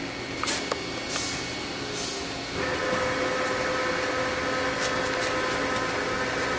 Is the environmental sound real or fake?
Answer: real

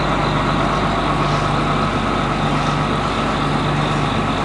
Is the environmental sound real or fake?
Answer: real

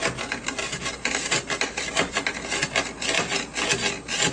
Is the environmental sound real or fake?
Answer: real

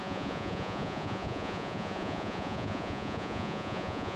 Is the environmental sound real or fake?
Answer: fake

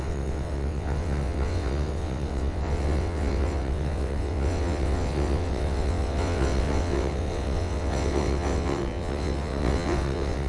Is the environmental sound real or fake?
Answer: fake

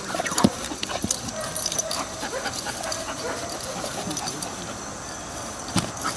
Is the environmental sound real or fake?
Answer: real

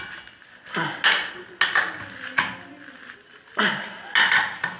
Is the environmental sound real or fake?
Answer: real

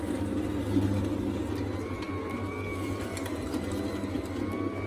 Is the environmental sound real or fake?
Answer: real